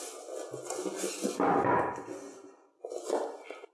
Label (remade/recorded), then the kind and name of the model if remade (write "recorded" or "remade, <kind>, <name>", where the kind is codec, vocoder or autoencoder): recorded